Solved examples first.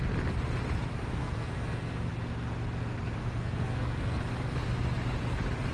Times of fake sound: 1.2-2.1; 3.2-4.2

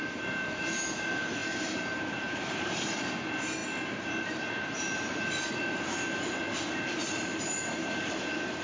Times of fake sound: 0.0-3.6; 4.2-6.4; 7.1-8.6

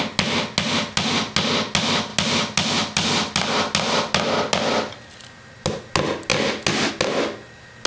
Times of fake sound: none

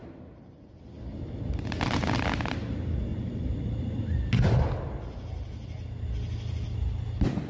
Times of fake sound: 3.1-4.0